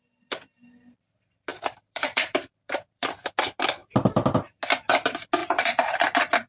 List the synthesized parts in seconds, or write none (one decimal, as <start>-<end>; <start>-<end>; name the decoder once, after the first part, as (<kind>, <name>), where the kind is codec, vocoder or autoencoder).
1.5-3.3 (vocoder, BigVGAN v2); 5.4-6.0